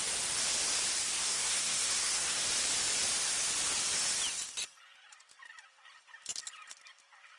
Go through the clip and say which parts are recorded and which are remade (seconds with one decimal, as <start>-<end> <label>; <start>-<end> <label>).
0.0-1.2 recorded; 1.2-2.4 remade; 2.4-7.4 recorded